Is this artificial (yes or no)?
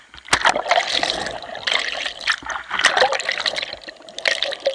no